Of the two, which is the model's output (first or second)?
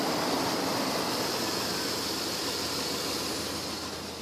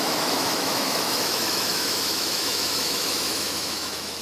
second